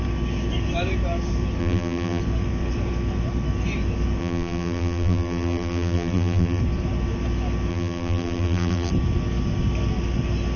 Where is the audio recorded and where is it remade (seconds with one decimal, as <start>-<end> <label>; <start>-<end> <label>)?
0.0-1.6 recorded; 1.6-2.2 remade; 2.2-4.2 recorded; 4.2-6.6 remade; 6.6-7.7 recorded; 7.7-8.9 remade; 8.9-10.6 recorded